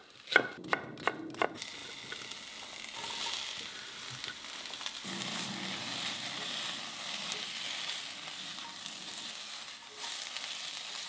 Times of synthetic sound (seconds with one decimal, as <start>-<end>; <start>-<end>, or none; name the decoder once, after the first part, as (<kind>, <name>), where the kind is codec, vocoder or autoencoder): none